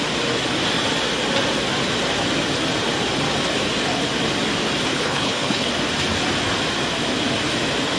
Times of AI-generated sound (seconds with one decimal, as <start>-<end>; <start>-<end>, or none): 4.9-5.7